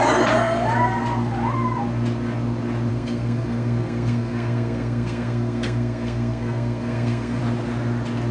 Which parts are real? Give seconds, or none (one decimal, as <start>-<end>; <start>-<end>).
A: 0.0-2.9; 7.4-8.3

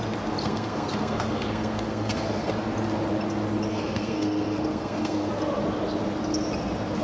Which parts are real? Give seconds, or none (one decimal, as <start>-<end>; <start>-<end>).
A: 0.0-0.4; 2.5-3.7; 5.3-7.0